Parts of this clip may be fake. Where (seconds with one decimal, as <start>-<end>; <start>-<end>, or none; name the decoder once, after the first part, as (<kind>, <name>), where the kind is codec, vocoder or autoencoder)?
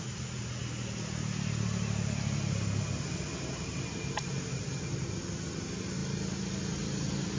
none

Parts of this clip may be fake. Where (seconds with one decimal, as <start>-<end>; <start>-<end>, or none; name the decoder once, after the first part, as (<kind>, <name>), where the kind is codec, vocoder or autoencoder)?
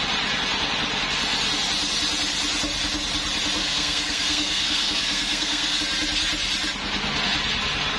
3.6-5.8 (codec, SNAC)